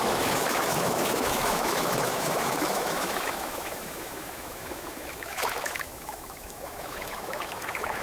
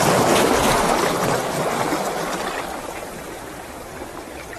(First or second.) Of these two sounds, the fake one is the first